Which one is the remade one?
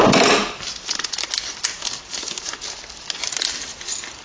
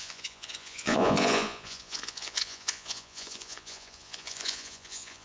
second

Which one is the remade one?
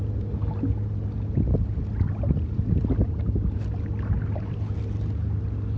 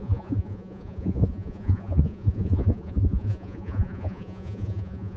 second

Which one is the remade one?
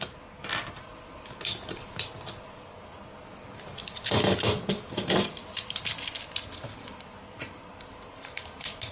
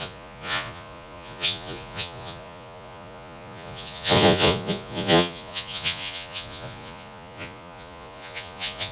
second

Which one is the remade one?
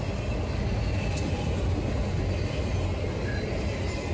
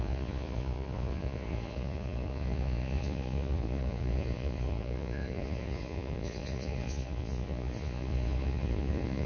second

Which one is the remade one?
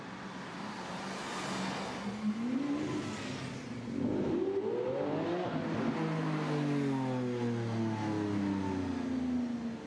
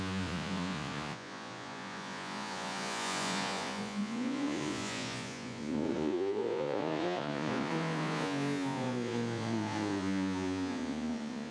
second